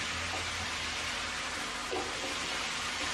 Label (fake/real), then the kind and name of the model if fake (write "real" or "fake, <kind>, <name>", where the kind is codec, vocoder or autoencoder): real